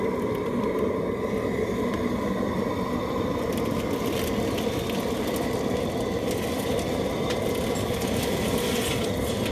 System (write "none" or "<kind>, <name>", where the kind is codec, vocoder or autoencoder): none